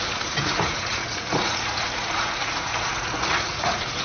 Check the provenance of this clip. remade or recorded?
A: remade